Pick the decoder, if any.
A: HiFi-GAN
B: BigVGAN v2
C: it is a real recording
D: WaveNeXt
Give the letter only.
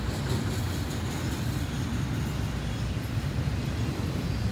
C